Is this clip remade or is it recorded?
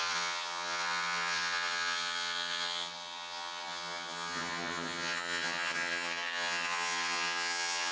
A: remade